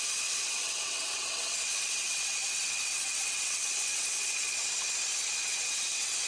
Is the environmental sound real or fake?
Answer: fake